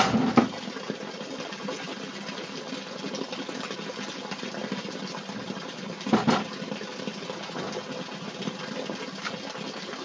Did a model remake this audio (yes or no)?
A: no